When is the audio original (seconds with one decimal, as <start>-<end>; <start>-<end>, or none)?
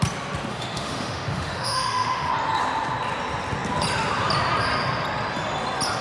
0.0-0.5; 2.3-6.0